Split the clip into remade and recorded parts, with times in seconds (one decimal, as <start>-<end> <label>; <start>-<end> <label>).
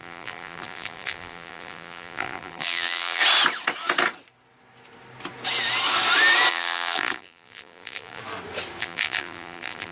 0.0-3.2 remade; 3.2-6.5 recorded; 6.5-8.2 remade; 8.2-8.8 recorded; 8.8-9.9 remade